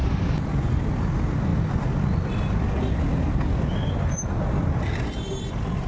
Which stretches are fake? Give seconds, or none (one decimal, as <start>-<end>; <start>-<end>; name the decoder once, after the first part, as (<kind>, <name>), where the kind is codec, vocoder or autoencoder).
0.0-0.8 (vocoder, BigVGAN v2)